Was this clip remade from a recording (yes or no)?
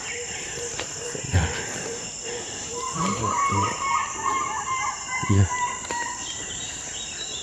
yes